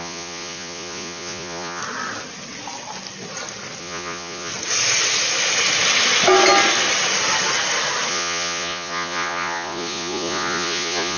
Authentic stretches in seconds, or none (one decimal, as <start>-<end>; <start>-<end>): 1.8-3.8; 4.5-8.1